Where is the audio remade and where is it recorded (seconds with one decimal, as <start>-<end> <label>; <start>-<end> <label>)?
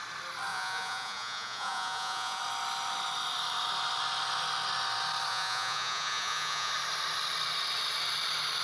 0.0-0.5 recorded; 0.5-2.4 remade; 2.4-5.3 recorded; 5.3-6.7 remade; 6.7-8.6 recorded